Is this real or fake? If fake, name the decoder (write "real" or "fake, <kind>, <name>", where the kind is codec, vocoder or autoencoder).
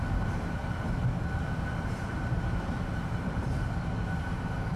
fake, vocoder, BigVGAN v2